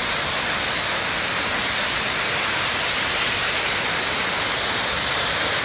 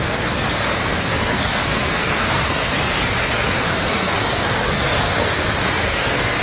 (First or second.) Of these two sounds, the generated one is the second